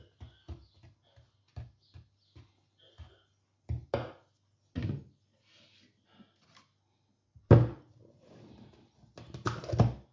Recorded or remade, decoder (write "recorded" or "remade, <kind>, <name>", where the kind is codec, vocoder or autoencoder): recorded